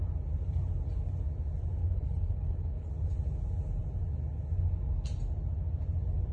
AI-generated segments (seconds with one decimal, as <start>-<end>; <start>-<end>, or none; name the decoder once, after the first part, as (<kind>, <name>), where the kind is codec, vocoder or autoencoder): 1.8-2.9 (codec, HILCodec)